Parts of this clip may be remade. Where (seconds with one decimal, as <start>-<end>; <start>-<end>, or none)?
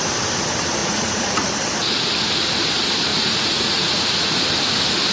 0.8-1.5; 3.1-4.4